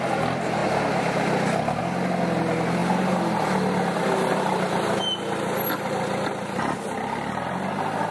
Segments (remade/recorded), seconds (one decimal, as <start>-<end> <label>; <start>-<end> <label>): 0.0-8.1 recorded